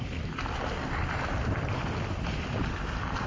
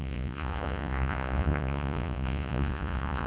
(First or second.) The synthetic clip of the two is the second